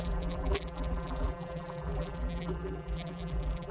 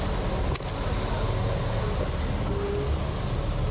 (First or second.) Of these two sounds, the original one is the second